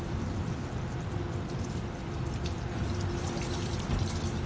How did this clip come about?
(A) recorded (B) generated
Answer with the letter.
A